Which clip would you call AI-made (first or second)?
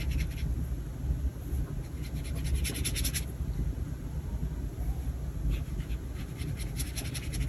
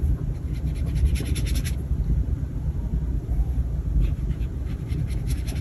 second